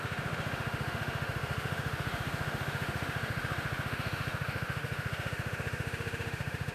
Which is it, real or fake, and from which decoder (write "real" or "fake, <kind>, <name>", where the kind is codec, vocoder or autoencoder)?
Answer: fake, autoencoder, DAC-VAE